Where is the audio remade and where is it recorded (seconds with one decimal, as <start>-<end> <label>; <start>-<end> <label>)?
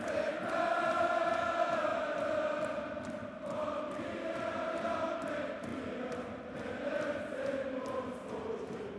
0.0-9.0 recorded